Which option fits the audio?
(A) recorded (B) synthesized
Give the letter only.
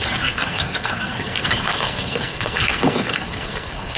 B